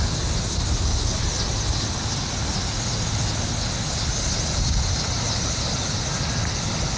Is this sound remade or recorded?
recorded